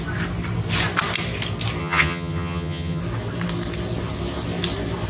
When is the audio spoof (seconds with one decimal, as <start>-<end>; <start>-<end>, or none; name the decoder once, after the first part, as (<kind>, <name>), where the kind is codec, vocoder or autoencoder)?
1.8-3.0 (vocoder, HiFi-GAN)